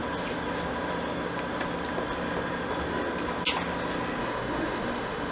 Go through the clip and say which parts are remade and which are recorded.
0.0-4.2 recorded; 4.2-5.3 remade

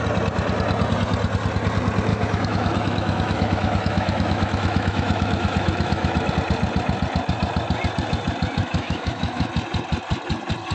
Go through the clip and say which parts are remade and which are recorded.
0.0-2.1 recorded; 2.1-6.3 remade; 6.3-8.6 recorded; 8.6-9.5 remade; 9.5-10.7 recorded

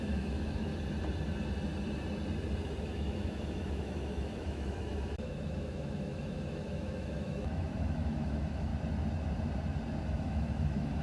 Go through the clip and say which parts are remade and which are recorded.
0.0-0.7 remade; 0.7-2.8 recorded; 2.8-8.7 remade; 8.7-10.0 recorded; 10.0-11.0 remade

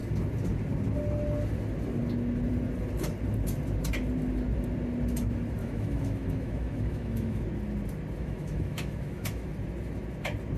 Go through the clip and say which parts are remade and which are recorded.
0.0-5.6 recorded; 5.6-7.4 remade; 7.4-8.2 recorded; 8.2-9.5 remade; 9.5-10.6 recorded

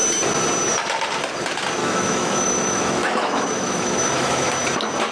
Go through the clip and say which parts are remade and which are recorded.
0.0-1.8 recorded; 1.8-4.5 remade; 4.5-5.1 recorded

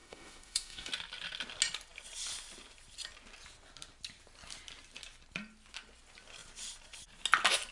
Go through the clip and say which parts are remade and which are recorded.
0.0-0.9 remade; 0.9-7.7 recorded

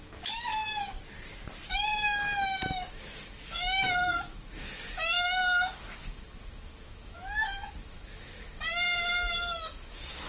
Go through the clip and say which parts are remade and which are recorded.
0.0-0.5 remade; 0.5-1.7 recorded; 1.7-10.3 remade

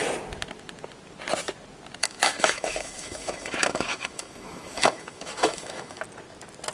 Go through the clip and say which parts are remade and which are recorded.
0.0-2.0 recorded; 2.0-6.0 remade; 6.0-6.7 recorded